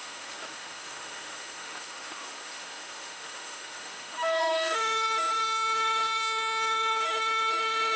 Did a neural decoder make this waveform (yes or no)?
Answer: yes